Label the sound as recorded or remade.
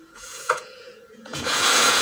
remade